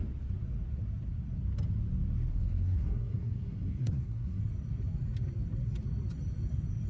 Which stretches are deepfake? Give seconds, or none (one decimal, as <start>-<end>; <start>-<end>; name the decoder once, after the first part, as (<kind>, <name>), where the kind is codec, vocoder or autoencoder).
2.3-4.4 (codec, SNAC)